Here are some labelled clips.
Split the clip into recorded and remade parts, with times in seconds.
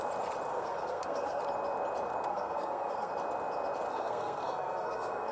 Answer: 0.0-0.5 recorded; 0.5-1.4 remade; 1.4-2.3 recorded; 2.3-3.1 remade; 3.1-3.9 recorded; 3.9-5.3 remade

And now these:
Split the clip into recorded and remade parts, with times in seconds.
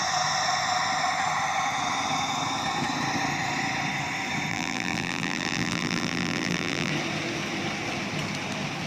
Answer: 0.0-4.5 recorded; 4.5-6.9 remade; 6.9-8.9 recorded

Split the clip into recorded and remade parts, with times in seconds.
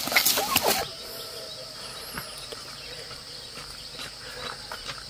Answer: 0.0-5.1 recorded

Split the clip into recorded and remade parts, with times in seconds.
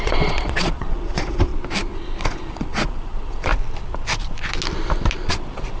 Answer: 0.0-1.5 remade; 1.5-2.3 recorded; 2.3-3.5 remade; 3.5-5.3 recorded; 5.3-5.8 remade